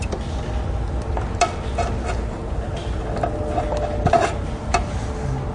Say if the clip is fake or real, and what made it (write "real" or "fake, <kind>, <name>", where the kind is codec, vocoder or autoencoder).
real